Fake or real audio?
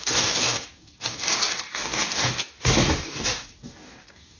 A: fake